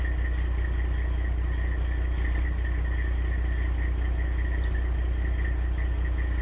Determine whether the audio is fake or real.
real